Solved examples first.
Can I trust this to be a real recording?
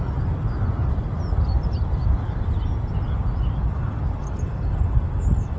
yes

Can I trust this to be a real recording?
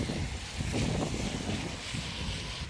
yes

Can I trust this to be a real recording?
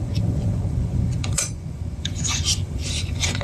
no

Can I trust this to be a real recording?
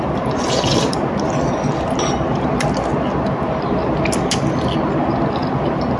yes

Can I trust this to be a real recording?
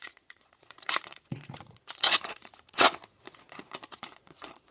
no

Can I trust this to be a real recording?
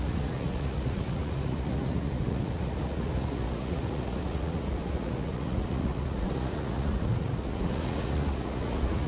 no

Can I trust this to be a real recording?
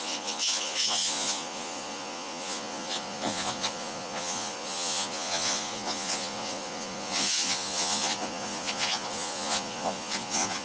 no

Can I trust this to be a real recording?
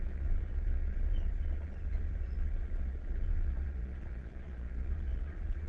no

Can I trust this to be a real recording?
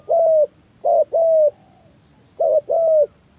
yes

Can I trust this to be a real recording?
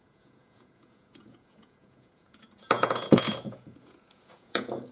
no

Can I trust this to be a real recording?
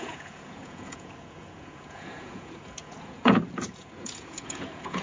no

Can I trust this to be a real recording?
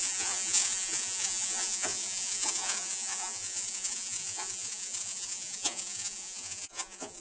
no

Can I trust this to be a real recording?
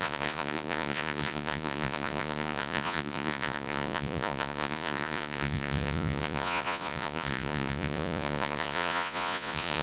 no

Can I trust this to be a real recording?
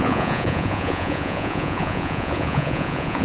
no